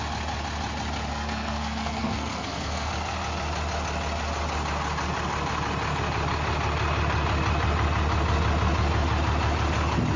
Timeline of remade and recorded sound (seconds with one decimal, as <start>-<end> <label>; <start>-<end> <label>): 0.0-1.1 recorded; 1.1-2.9 remade; 2.9-10.2 recorded